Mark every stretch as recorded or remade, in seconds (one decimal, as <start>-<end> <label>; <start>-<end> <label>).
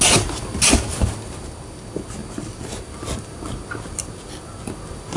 0.0-5.2 recorded